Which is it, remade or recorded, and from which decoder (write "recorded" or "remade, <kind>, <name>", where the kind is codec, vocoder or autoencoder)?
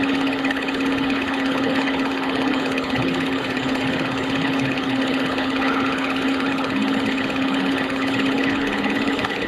remade, codec, HILCodec